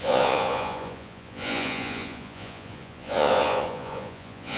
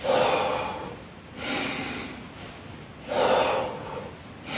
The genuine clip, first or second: second